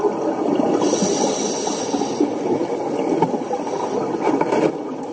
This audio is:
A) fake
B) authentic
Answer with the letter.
B